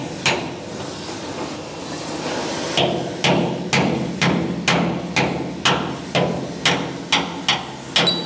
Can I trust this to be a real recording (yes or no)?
yes